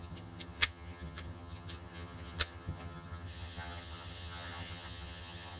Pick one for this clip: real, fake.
fake